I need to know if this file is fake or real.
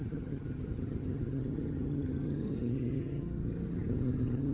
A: fake